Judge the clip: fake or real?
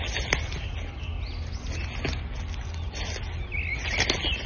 real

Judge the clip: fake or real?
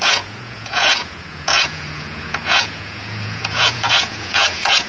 fake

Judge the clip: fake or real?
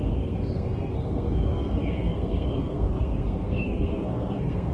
fake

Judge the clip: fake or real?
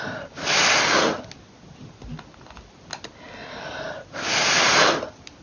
real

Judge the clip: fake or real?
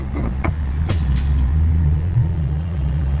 fake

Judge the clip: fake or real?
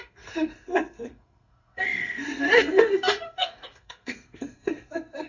fake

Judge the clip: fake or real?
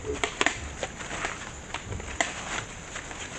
real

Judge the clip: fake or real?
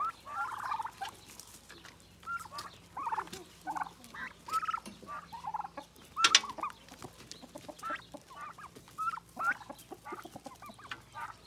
real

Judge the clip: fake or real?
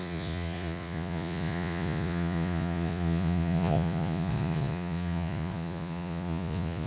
fake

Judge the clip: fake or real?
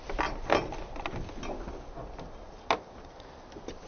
real